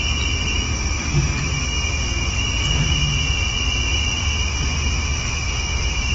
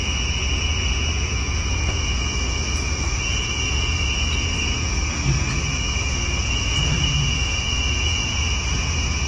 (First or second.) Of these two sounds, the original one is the first